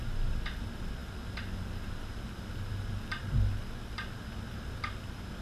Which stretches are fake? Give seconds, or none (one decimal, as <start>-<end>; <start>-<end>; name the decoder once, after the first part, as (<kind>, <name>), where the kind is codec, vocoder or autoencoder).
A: none